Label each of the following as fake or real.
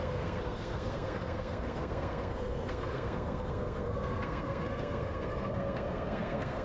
fake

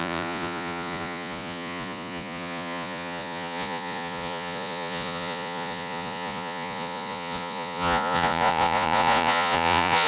fake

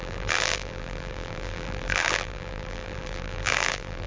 fake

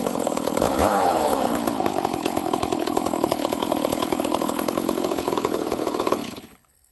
fake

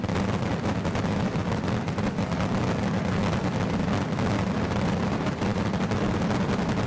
real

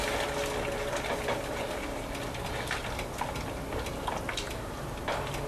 real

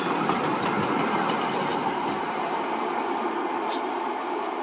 real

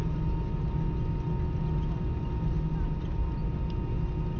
real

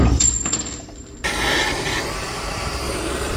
fake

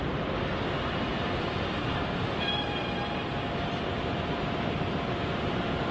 real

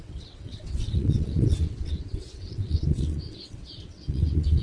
fake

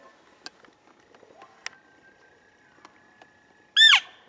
real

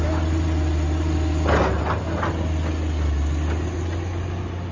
real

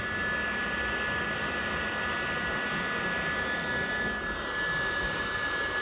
real